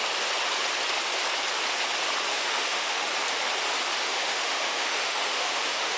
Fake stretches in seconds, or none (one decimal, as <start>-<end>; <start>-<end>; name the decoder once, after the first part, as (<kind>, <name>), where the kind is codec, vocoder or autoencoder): 2.3-3.1 (autoencoder, DAC-VAE); 4.0-6.0